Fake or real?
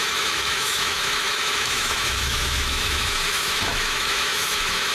fake